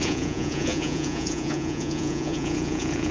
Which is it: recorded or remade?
remade